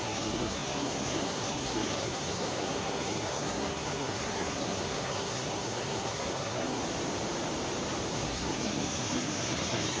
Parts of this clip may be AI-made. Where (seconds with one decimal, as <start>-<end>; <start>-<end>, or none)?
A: 0.0-6.8; 8.1-10.0

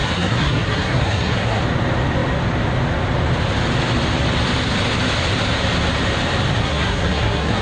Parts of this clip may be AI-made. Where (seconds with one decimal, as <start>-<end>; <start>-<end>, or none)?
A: 0.0-1.6; 6.6-7.6

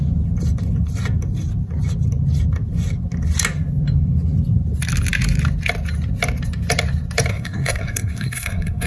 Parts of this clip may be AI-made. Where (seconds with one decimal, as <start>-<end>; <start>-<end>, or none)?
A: 7.3-8.9

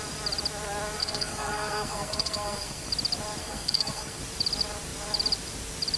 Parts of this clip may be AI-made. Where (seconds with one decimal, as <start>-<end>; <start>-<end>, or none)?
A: 1.0-2.9; 3.4-4.2

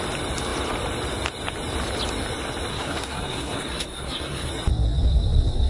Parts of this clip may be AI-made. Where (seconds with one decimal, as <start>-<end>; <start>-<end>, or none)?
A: 2.7-4.5